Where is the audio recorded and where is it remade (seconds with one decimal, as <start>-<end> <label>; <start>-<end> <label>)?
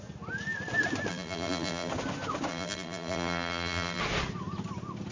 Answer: 0.0-1.1 recorded; 1.1-1.9 remade; 1.9-2.5 recorded; 2.5-4.0 remade; 4.0-5.1 recorded